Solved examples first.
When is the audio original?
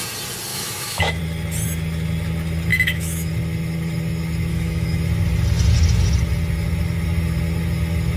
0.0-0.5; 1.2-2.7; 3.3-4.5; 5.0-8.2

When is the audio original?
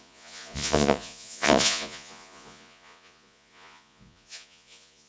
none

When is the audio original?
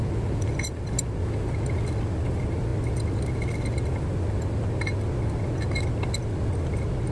0.0-7.1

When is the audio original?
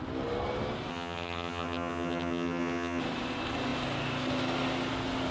0.0-0.9; 3.0-5.3